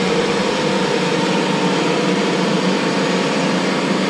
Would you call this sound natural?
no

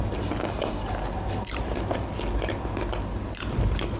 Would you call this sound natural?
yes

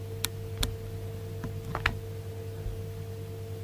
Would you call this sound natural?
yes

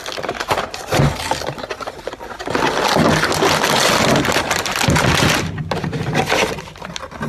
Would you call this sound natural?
yes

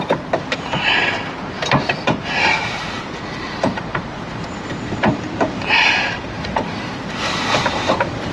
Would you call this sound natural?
no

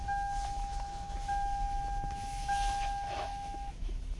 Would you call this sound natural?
no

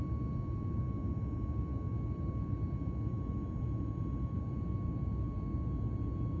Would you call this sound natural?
yes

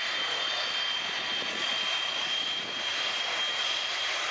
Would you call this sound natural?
yes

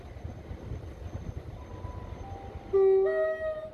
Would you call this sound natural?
yes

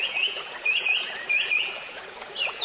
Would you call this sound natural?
no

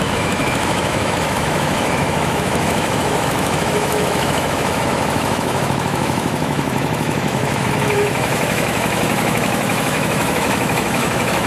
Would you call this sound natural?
no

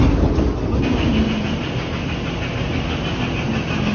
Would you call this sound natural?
yes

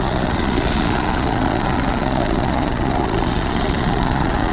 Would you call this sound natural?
no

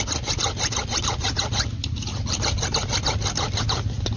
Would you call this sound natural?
yes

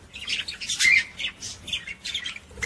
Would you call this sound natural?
yes